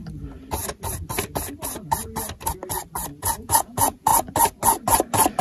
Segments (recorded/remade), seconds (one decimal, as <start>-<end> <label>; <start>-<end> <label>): 0.0-3.2 recorded; 3.2-4.1 remade; 4.1-5.4 recorded